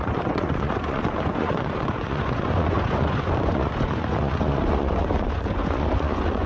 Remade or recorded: remade